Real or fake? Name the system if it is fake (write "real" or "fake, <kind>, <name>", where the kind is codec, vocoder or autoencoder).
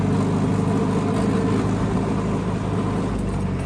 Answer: real